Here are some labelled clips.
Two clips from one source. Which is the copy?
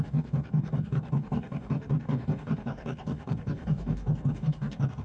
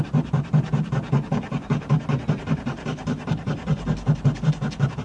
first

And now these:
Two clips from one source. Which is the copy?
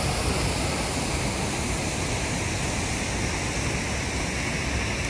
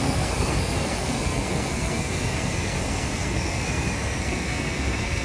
second